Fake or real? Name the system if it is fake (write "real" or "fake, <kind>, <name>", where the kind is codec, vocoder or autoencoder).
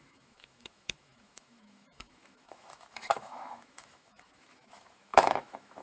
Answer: fake, autoencoder, DAC-VAE